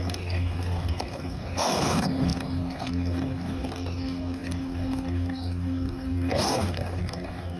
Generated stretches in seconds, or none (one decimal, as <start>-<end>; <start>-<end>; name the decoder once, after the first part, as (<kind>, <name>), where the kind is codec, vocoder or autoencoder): 0.0-7.6 (codec, DAC)